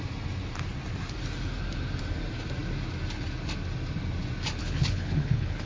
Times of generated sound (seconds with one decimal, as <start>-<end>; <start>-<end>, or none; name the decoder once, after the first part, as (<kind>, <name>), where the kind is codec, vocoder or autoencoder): 4.6-5.7 (codec, HILCodec)